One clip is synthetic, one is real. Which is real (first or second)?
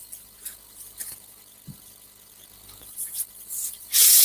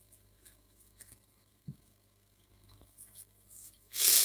first